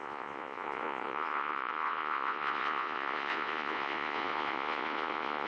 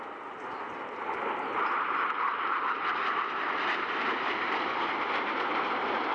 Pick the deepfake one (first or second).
first